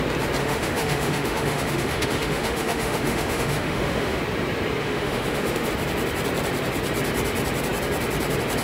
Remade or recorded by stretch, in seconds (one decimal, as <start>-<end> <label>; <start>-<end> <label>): 0.0-0.4 recorded; 0.4-4.2 remade; 4.2-4.8 recorded; 4.8-5.7 remade; 5.7-8.6 recorded

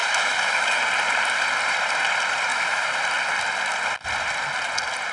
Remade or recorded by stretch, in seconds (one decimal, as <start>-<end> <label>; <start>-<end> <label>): 0.0-0.8 remade; 0.8-2.5 recorded; 2.5-3.0 remade; 3.0-5.1 recorded

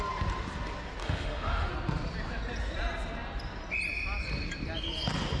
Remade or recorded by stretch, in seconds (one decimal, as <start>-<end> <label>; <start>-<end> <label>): 0.0-1.0 recorded; 1.0-1.7 remade; 1.7-5.4 recorded

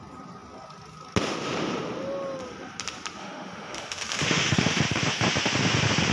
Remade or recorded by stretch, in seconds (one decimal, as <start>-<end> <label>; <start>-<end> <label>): 0.0-3.2 recorded; 3.2-4.8 remade; 4.8-6.1 recorded

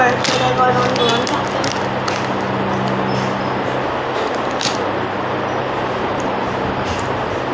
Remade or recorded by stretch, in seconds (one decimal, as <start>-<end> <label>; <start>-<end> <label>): 0.0-7.5 recorded

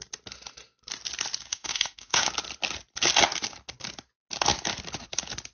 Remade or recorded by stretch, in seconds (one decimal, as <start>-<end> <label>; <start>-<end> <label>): 0.0-1.5 recorded; 1.5-2.3 remade; 2.3-5.5 recorded